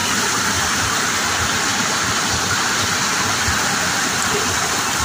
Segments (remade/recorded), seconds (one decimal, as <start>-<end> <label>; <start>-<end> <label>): 0.0-5.0 recorded